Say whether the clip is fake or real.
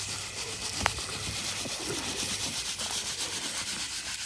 real